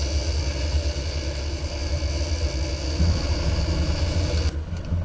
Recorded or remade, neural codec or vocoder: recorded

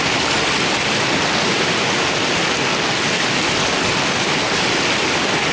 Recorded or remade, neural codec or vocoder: recorded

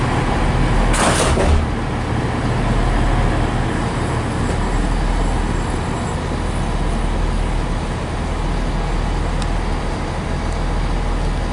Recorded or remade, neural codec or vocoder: recorded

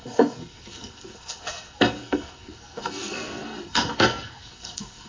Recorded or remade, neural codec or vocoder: remade, codec, SNAC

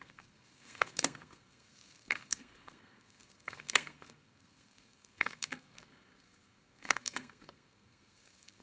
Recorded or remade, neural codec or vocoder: remade, codec, SNAC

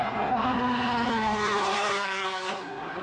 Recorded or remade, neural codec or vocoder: remade, codec, SNAC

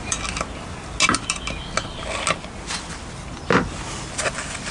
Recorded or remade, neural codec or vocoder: recorded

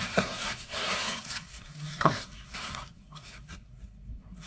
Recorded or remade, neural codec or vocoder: remade, codec, SNAC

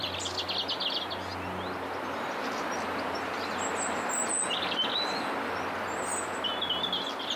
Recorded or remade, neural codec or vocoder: recorded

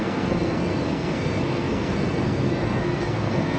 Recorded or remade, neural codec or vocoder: remade, codec, SNAC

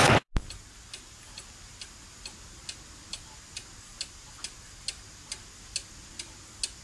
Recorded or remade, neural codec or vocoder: recorded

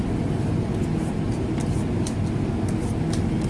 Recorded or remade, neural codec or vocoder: recorded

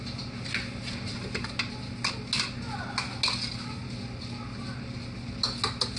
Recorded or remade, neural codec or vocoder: recorded